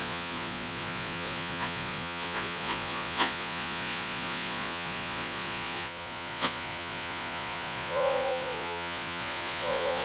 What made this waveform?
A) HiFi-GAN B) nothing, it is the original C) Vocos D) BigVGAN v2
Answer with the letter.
C